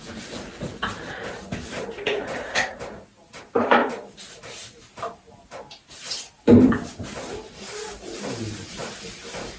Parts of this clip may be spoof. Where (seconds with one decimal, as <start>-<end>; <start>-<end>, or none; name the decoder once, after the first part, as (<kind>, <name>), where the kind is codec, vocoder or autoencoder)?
0.0-9.6 (vocoder, BigVGAN v2)